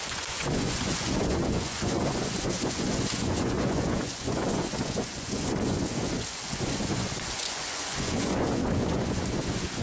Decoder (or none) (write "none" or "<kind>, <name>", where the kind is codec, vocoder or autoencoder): vocoder, Vocos